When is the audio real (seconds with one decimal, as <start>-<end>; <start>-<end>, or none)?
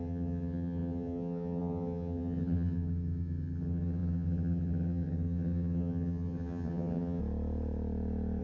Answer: 7.2-8.4